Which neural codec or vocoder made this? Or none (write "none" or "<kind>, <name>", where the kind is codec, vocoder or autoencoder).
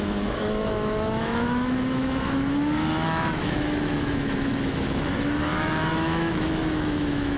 autoencoder, DAC-VAE